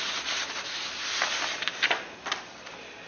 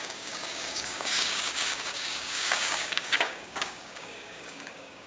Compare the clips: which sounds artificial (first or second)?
second